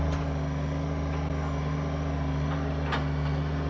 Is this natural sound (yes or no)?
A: yes